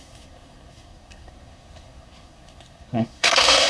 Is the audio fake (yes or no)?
yes